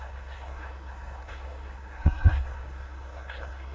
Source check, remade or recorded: remade